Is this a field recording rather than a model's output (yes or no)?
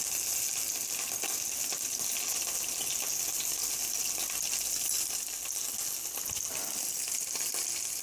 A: yes